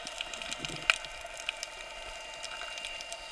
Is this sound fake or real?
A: real